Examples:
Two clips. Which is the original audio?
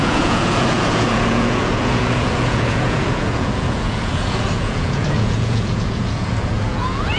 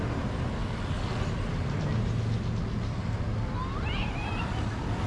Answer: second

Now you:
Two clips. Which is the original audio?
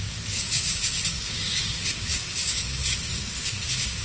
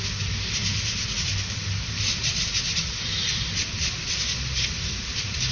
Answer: second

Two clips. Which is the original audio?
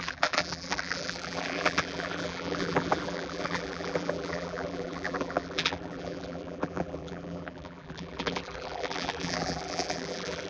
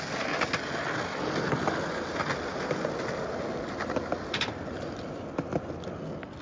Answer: second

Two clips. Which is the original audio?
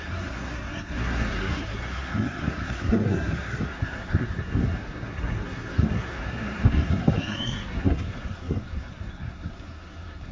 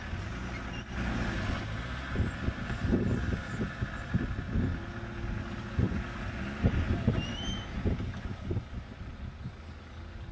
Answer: second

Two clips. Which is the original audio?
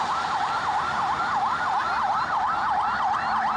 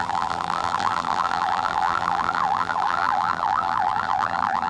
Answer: first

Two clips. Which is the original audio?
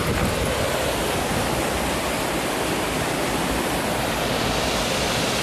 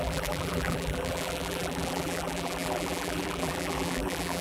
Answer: first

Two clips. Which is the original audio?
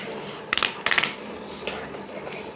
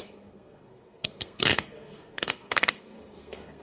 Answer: first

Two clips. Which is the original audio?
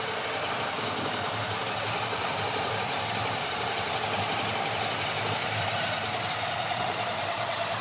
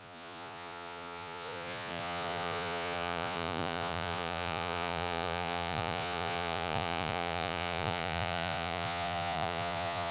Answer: first